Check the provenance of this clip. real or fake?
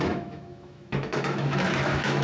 fake